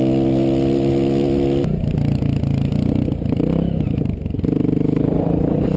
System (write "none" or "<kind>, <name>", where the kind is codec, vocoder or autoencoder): none